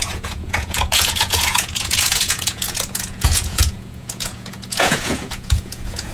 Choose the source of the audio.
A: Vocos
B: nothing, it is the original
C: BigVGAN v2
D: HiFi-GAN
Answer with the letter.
A